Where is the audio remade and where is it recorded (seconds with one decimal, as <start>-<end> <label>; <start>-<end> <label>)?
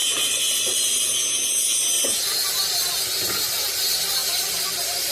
0.0-1.0 remade; 1.0-4.2 recorded; 4.2-5.1 remade